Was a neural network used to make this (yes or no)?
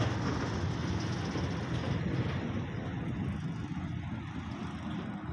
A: no